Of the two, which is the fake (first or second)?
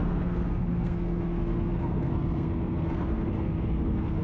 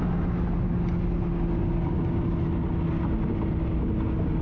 first